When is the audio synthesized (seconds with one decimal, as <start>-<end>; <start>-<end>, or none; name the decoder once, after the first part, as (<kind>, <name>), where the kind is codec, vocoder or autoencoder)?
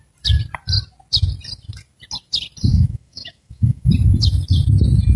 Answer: 2.7-3.9 (autoencoder, DAC-VAE)